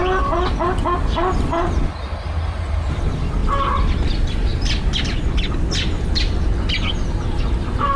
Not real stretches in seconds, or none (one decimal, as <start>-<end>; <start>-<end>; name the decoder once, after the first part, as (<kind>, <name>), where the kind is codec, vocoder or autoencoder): none